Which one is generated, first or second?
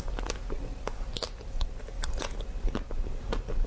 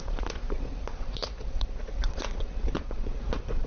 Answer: second